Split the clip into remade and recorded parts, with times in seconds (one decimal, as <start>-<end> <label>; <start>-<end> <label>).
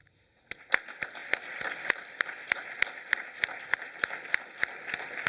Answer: 0.0-0.6 remade; 0.6-1.2 recorded; 1.2-4.4 remade; 4.4-5.3 recorded